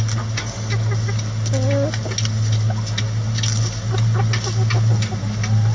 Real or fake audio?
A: real